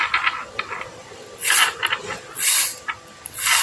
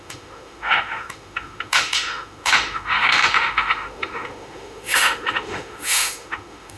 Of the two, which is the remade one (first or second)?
second